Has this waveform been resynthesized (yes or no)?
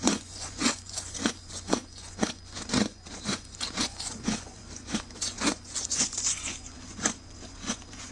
yes